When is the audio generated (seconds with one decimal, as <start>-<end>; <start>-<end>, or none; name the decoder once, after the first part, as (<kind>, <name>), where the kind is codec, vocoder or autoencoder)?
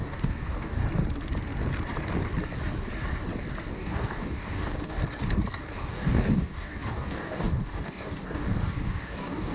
0.0-0.8 (codec, DAC); 3.7-5.0; 5.6-9.5